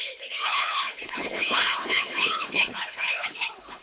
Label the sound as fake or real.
fake